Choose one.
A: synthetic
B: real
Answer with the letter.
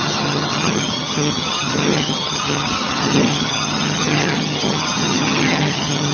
A